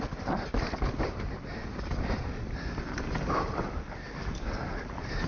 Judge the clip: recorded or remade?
recorded